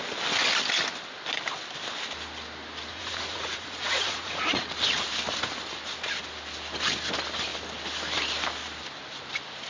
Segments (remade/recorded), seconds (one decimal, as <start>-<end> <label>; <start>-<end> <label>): 0.0-2.9 recorded; 2.9-4.7 remade; 4.7-9.7 recorded